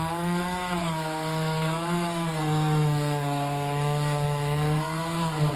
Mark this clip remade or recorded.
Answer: remade